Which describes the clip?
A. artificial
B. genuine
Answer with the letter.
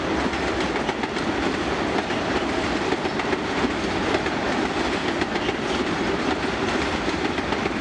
B